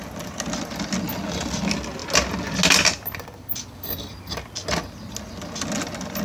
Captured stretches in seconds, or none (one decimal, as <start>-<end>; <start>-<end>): 0.0-6.2